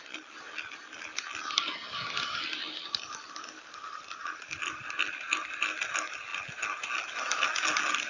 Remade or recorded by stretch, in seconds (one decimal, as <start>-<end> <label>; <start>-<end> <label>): 0.0-8.1 recorded